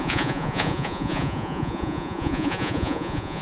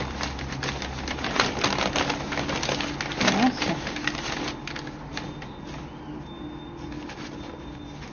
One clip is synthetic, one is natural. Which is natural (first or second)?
second